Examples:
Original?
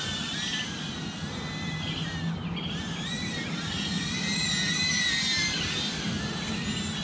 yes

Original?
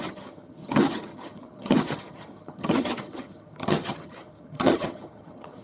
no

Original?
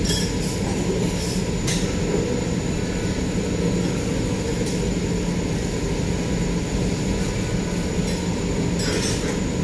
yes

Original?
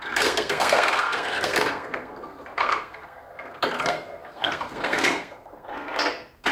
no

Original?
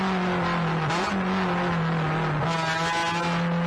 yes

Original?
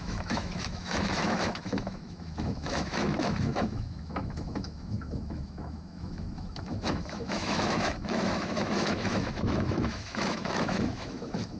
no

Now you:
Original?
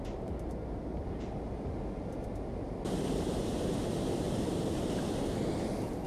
yes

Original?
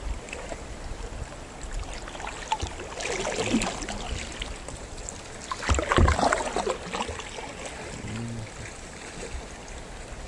yes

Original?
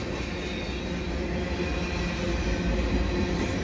yes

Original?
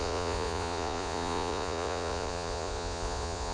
no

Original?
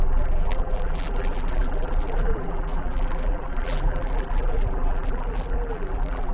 no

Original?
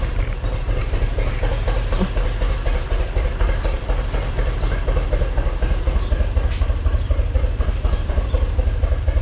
no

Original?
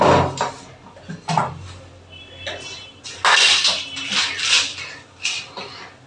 yes